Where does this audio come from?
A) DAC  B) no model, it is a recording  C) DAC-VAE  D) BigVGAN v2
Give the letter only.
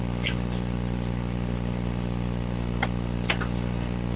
B